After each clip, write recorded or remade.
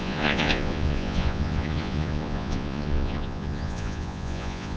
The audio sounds remade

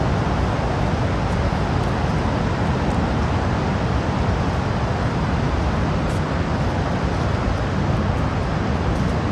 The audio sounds recorded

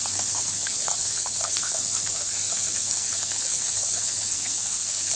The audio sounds remade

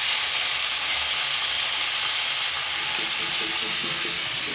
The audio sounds recorded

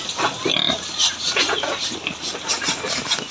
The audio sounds recorded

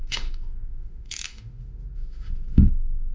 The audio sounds remade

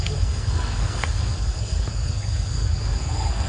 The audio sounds remade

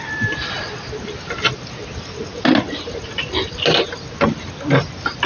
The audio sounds recorded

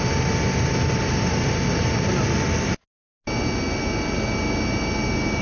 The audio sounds recorded